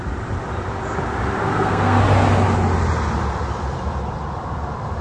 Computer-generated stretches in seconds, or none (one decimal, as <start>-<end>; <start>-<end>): 1.4-2.0